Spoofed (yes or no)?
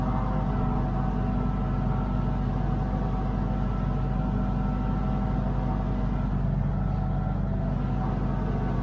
no